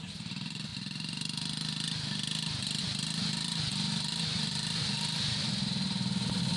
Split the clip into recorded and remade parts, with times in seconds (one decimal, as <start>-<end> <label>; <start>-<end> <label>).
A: 0.0-0.7 remade; 0.7-2.8 recorded; 2.8-6.6 remade